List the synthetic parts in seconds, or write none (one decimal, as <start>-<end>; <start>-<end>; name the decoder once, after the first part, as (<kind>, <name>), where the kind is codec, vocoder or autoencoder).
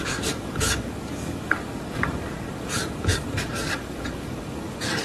0.0-5.0 (codec, DAC)